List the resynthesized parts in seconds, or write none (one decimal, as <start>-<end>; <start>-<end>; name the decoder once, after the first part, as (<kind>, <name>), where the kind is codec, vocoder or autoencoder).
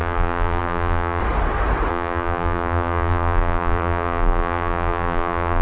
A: 0.0-1.2 (vocoder, BigVGAN v2); 1.9-5.6